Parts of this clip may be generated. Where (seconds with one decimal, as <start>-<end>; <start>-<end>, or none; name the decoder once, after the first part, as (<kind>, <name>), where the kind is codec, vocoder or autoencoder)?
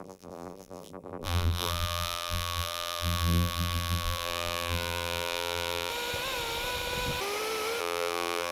0.0-5.9 (vocoder, BigVGAN v2); 7.8-8.5